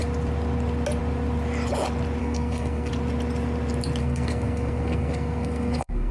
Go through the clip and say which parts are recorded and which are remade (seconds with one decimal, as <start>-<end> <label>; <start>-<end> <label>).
0.0-2.2 recorded; 2.2-2.9 remade; 2.9-4.0 recorded; 4.0-6.1 remade